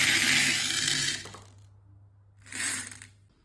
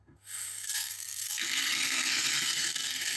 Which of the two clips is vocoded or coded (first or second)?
second